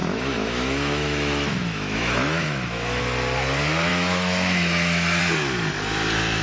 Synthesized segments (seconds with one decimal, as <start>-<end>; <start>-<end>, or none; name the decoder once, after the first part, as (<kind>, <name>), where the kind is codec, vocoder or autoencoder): 0.0-3.0 (autoencoder, DAC-VAE); 3.9-5.2